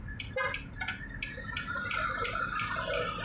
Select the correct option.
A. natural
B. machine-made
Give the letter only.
A